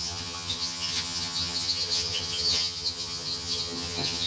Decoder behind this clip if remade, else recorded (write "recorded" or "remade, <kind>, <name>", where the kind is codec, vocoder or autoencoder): remade, vocoder, HiFi-GAN